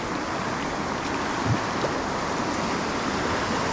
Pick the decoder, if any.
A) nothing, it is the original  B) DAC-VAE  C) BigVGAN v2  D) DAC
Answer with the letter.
A